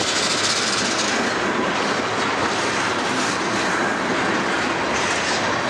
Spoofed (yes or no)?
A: no